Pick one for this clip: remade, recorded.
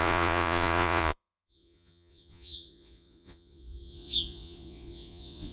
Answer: remade